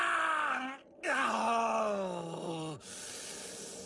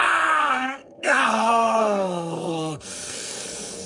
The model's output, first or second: second